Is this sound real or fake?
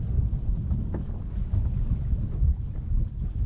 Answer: real